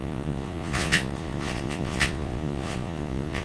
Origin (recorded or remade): remade